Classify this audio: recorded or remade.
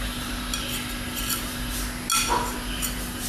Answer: recorded